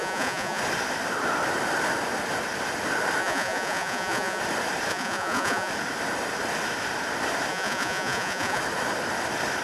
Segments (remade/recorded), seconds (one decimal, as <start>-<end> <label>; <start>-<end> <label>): 0.0-0.6 remade; 0.6-3.2 recorded; 3.2-4.4 remade; 4.4-4.9 recorded; 4.9-5.7 remade; 5.7-7.5 recorded; 7.5-8.6 remade; 8.6-9.6 recorded